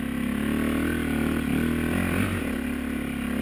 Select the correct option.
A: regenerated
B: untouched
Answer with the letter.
B